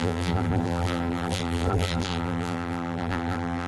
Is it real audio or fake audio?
fake